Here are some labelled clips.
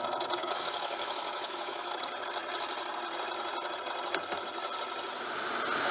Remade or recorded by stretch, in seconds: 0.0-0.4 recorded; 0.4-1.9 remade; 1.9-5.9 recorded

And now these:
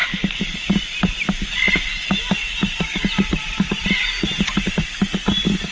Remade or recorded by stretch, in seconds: 0.0-5.7 recorded

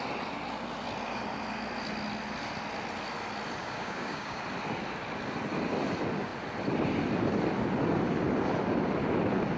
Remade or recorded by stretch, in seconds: 0.0-3.6 recorded; 3.6-4.4 remade; 4.4-9.6 recorded

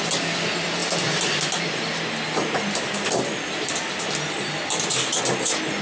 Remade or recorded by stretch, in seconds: 0.0-5.8 recorded

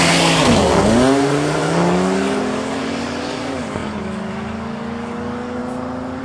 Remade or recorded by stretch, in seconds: 0.0-5.6 remade; 5.6-6.2 recorded

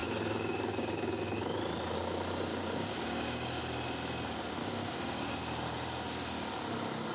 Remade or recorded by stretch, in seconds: 0.0-1.2 remade; 1.2-2.5 recorded; 2.5-3.6 remade; 3.6-4.6 recorded; 4.6-5.3 remade; 5.3-7.1 recorded